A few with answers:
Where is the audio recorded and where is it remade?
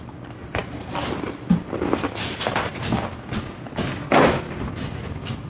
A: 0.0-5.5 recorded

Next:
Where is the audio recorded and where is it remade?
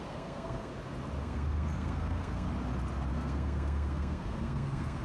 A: 0.0-0.7 remade; 0.7-1.2 recorded; 1.2-2.5 remade; 2.5-3.1 recorded; 3.1-5.0 remade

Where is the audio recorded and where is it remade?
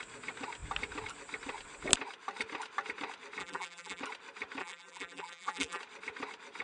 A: 0.0-3.4 recorded; 3.4-4.0 remade; 4.0-4.6 recorded; 4.6-5.8 remade; 5.8-6.6 recorded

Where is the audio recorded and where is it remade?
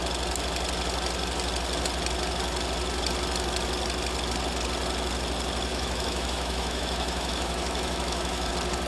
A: 0.0-5.7 recorded; 5.7-8.5 remade; 8.5-8.9 recorded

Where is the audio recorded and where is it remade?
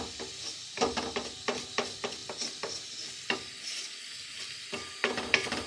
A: 0.0-5.7 recorded